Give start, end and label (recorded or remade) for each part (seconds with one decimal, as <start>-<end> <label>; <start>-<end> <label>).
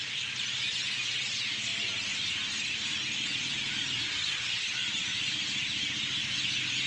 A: 0.0-6.9 remade